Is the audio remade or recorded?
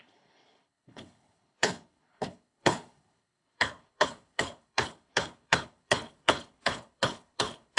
remade